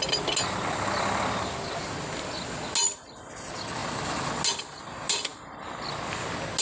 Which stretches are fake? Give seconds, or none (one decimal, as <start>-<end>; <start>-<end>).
none